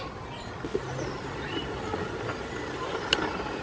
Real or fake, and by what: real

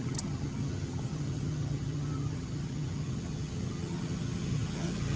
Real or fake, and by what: fake, vocoder, HiFi-GAN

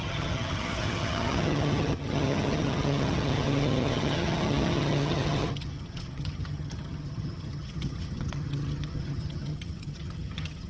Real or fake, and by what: fake, vocoder, HiFi-GAN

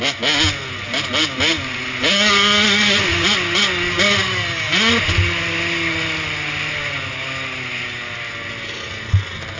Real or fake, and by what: real